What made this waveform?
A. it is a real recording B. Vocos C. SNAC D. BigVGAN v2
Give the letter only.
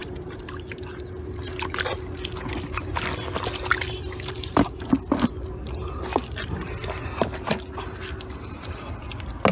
A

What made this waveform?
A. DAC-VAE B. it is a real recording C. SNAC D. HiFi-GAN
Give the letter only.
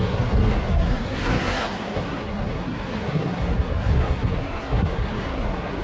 C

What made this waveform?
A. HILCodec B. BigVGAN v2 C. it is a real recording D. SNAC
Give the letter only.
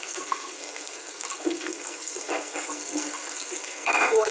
D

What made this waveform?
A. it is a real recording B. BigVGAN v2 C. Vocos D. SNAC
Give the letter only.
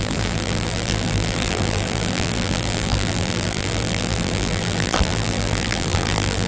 B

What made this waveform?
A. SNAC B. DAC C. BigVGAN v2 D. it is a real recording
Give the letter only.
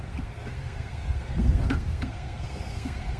A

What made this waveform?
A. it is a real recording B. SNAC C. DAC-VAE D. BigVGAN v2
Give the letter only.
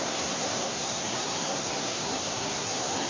B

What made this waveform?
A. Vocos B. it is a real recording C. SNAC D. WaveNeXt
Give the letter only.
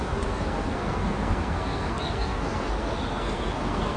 C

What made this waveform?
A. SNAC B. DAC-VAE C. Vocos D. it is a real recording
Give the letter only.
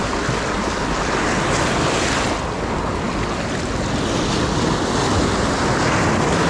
D